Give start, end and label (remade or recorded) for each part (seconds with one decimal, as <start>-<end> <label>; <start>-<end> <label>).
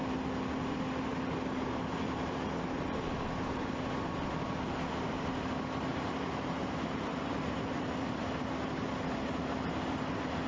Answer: 0.0-5.9 recorded; 5.9-8.2 remade; 8.2-10.5 recorded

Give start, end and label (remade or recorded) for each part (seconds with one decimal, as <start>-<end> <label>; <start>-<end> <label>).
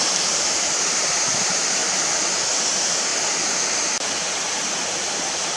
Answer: 0.0-1.8 remade; 1.8-2.6 recorded; 2.6-3.1 remade; 3.1-5.6 recorded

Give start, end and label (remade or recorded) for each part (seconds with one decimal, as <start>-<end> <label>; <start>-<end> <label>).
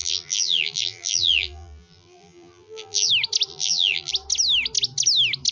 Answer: 0.0-3.1 remade; 3.1-3.5 recorded; 3.5-4.1 remade; 4.1-5.5 recorded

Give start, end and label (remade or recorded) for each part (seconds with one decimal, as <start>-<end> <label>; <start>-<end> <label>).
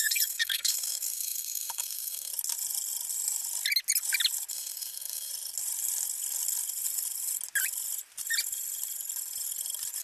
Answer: 0.0-2.3 remade; 2.3-4.5 recorded; 4.5-5.3 remade; 5.3-10.0 recorded